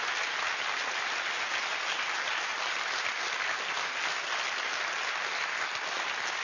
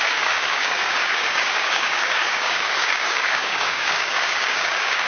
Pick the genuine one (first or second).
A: first